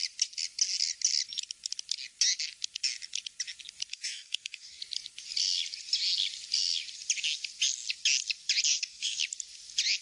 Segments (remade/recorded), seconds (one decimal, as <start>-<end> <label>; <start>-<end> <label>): 0.0-3.9 recorded; 3.9-4.8 remade; 4.8-8.7 recorded; 8.7-9.2 remade; 9.2-10.0 recorded